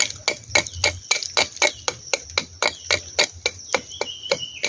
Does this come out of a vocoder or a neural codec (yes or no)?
no